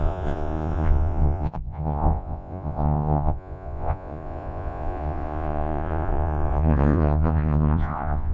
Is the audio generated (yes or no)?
yes